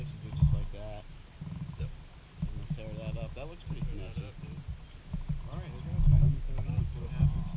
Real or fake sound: real